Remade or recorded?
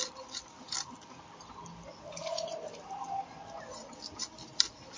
recorded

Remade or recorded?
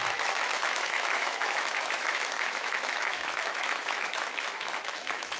remade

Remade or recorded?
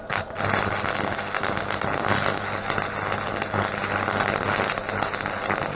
recorded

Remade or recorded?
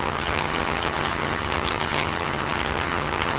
remade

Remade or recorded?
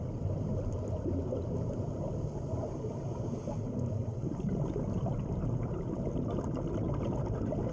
recorded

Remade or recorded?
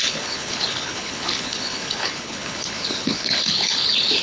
remade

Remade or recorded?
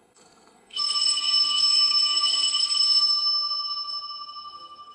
remade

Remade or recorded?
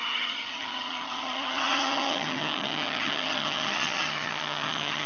remade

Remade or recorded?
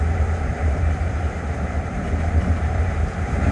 remade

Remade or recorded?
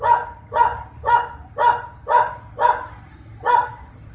recorded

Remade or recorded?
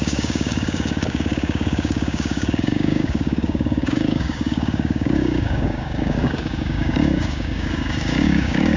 remade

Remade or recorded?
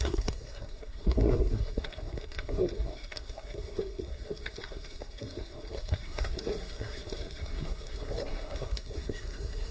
remade